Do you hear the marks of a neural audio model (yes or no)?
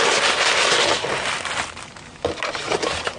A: no